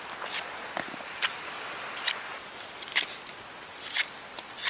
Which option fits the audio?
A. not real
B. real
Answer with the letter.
B